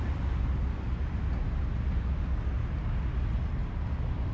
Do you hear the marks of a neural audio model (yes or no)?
no